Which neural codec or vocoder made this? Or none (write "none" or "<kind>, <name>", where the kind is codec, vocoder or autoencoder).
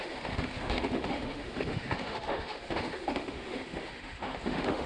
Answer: autoencoder, DAC-VAE